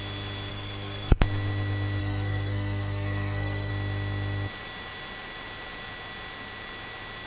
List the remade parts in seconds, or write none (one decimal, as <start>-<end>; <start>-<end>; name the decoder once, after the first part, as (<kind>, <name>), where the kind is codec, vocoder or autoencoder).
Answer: 0.5-1.2 (codec, SNAC); 2.0-3.7